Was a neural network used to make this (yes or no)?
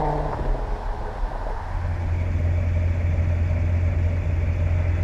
no